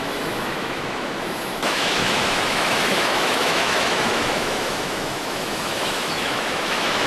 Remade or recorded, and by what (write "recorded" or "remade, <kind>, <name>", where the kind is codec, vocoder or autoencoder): remade, autoencoder, DAC-VAE